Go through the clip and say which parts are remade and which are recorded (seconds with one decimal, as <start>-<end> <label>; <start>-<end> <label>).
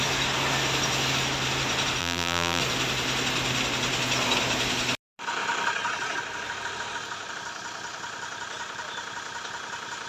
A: 0.0-2.0 recorded; 2.0-2.6 remade; 2.6-10.1 recorded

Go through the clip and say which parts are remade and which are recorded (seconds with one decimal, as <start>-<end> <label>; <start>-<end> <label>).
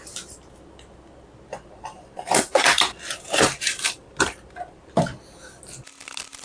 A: 0.0-1.5 recorded; 1.5-4.9 remade; 4.9-6.4 recorded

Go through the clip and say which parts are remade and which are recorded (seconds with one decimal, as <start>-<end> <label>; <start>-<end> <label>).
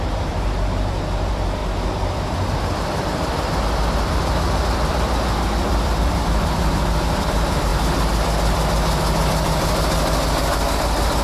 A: 0.0-1.6 remade; 1.6-3.0 recorded; 3.0-7.7 remade; 7.7-10.7 recorded; 10.7-11.2 remade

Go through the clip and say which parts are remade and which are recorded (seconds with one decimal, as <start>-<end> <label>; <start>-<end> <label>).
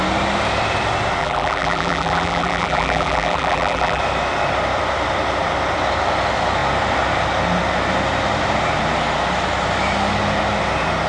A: 0.0-1.2 recorded; 1.2-4.0 remade; 4.0-11.1 recorded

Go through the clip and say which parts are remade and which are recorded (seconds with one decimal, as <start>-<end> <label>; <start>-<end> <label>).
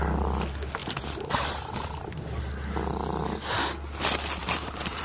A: 0.0-0.8 recorded; 0.8-1.7 remade; 1.7-4.4 recorded; 4.4-5.0 remade